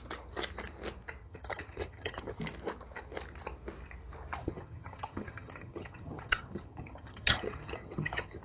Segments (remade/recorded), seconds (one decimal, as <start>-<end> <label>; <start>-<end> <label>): 0.0-1.2 recorded; 1.2-2.4 remade; 2.4-4.4 recorded; 4.4-8.4 remade